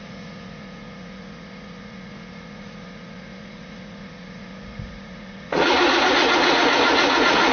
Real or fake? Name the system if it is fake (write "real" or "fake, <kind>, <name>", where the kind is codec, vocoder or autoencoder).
fake, vocoder, Vocos